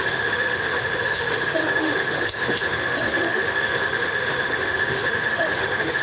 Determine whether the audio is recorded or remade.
remade